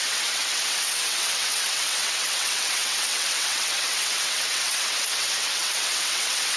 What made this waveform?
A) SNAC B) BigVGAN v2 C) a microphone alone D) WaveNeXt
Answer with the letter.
D